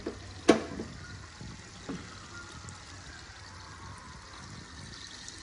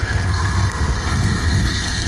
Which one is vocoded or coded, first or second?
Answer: second